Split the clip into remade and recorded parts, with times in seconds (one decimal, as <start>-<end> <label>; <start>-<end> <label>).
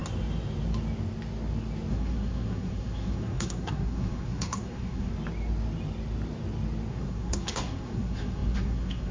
0.0-1.9 recorded; 1.9-5.1 remade; 5.1-6.9 recorded; 6.9-9.1 remade